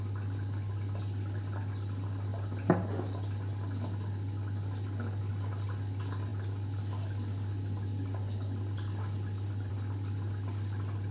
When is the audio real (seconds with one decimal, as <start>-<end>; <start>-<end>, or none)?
0.0-11.1